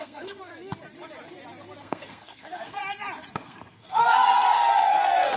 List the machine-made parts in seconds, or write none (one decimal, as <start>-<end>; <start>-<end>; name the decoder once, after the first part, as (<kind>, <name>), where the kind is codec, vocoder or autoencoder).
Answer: 0.0-0.5 (codec, SNAC); 1.8-2.8; 3.3-5.4